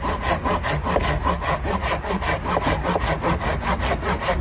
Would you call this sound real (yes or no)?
yes